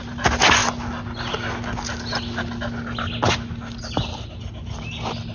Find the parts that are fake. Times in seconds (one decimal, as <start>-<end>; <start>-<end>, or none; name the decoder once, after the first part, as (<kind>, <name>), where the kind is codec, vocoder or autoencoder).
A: none